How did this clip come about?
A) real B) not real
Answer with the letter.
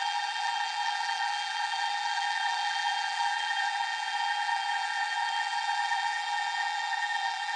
B